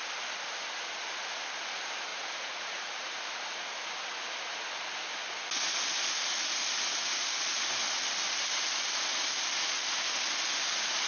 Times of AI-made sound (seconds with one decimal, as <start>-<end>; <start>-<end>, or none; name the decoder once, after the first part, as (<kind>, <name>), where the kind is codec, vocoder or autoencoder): 2.1-3.2 (vocoder, Vocos)